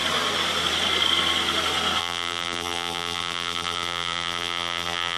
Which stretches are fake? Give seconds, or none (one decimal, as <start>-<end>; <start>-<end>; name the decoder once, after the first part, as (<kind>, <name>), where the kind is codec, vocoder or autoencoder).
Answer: 2.0-5.2 (vocoder, BigVGAN v2)